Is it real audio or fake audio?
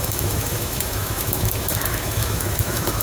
fake